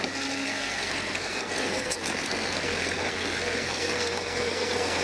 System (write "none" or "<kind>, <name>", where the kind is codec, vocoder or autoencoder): codec, SNAC